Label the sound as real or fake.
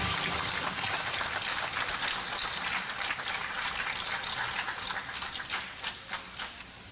real